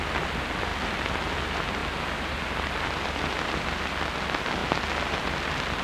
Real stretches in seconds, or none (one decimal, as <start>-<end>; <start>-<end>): 0.0-5.8